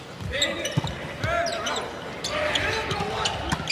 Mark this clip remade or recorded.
recorded